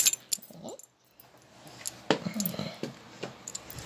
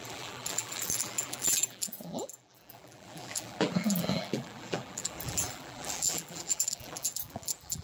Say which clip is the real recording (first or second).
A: first